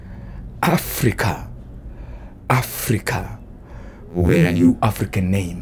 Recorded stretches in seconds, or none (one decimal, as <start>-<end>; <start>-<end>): 0.0-4.1; 4.7-5.6